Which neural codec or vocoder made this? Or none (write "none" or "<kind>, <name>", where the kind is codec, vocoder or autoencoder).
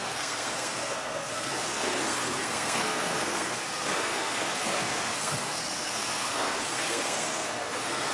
codec, SNAC